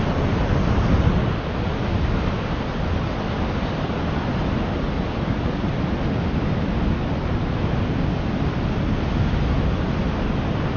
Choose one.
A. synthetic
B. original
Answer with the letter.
B